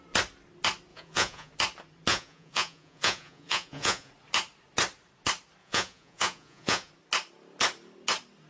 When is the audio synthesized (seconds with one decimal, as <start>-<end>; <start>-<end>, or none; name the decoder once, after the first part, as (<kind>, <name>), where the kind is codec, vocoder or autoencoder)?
0.9-1.5 (vocoder, Vocos); 2.1-4.1; 5.6-6.9